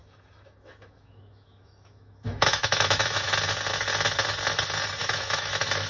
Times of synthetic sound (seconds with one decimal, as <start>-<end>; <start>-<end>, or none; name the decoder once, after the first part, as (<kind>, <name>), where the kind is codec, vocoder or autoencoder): 0.0-3.3 (autoencoder, DAC-VAE); 5.0-5.9